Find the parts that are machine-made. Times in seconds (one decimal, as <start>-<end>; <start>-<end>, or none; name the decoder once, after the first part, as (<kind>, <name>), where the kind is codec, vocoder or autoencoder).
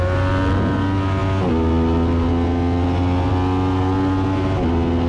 none